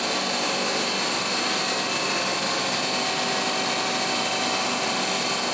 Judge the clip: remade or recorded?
recorded